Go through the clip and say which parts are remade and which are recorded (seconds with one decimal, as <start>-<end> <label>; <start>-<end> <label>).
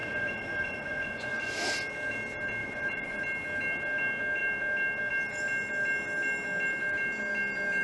0.0-1.5 remade; 1.5-2.6 recorded; 2.6-3.2 remade; 3.2-7.8 recorded